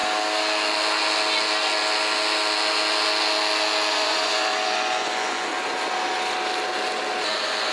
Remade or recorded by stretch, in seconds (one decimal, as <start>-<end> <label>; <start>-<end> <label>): 0.0-3.9 recorded; 3.9-5.5 remade; 5.5-7.3 recorded; 7.3-7.7 remade